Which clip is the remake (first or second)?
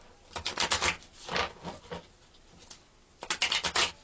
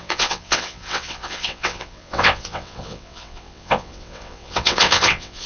second